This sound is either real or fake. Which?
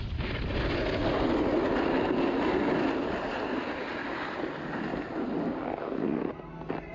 real